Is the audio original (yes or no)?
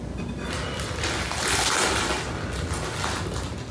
yes